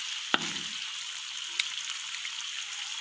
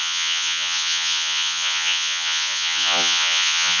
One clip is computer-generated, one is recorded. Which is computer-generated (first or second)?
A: second